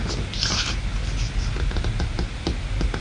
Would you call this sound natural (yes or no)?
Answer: yes